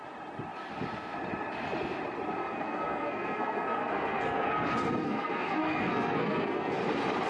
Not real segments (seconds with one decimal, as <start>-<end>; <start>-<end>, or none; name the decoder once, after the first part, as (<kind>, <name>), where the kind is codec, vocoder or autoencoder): 2.4-6.8 (codec, SNAC)